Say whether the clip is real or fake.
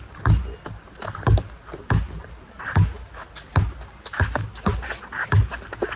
real